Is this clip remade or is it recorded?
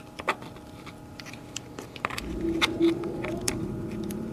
remade